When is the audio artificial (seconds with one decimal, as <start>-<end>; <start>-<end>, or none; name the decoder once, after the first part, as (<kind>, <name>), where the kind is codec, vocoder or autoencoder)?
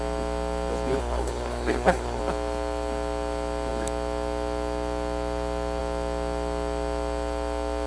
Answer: 1.0-2.2 (codec, SNAC)